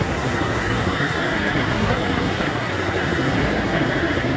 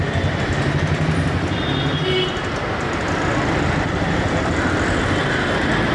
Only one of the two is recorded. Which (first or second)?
second